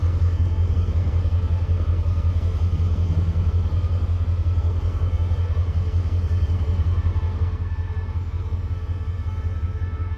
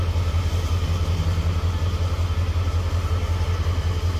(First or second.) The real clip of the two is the second